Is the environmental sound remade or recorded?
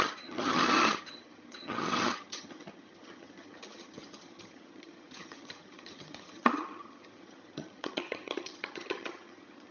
remade